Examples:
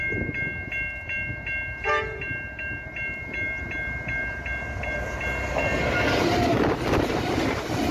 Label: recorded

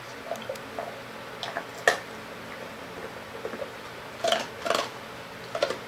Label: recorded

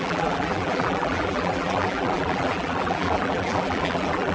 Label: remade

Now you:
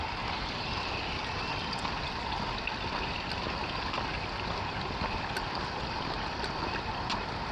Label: recorded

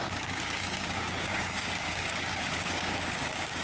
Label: remade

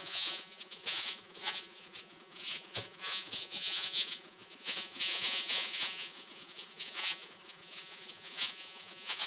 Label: remade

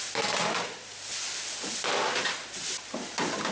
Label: recorded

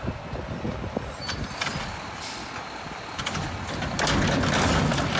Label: recorded